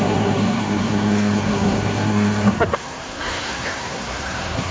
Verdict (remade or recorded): remade